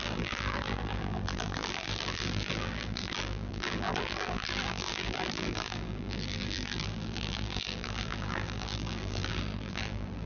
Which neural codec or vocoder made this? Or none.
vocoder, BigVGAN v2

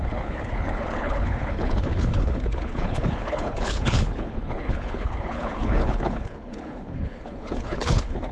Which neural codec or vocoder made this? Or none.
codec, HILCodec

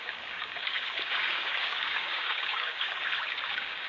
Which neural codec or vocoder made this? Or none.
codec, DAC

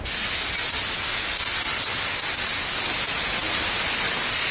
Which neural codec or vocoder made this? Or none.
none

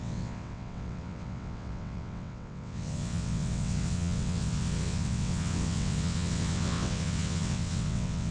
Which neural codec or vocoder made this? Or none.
vocoder, WaveNeXt